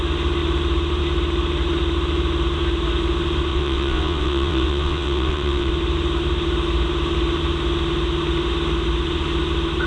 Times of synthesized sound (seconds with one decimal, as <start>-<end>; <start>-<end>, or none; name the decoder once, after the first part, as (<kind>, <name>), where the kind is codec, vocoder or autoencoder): 3.5-5.7 (vocoder, WaveNeXt)